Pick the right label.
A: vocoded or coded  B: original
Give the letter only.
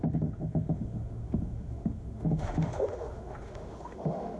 A